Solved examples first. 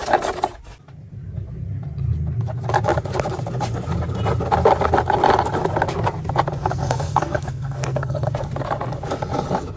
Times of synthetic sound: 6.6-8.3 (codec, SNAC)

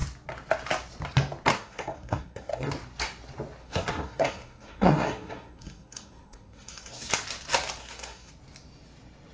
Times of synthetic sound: 1.5-2.7 (codec, SNAC); 3.6-7.1; 7.8-8.3

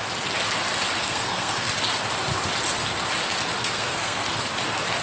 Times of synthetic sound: 1.0-1.7 (codec, SNAC); 3.6-4.4

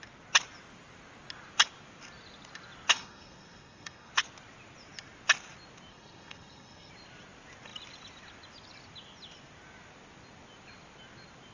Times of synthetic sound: 2.9-4.1 (codec, SNAC); 5.9-6.9

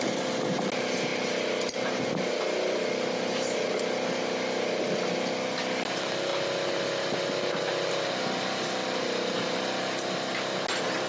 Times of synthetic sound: none